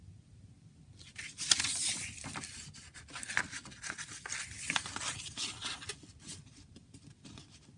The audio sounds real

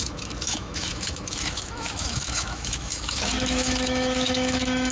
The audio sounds fake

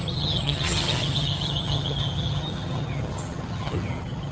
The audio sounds fake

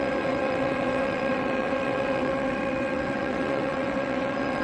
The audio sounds fake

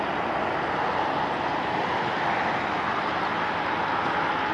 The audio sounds real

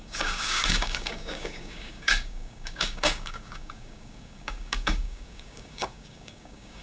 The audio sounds fake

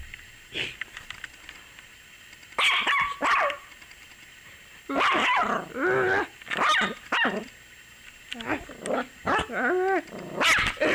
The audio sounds real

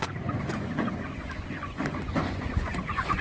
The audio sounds fake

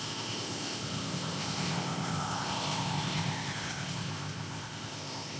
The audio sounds fake